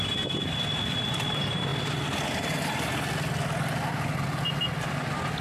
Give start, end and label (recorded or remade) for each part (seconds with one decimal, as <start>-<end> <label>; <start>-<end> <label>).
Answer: 0.0-5.4 recorded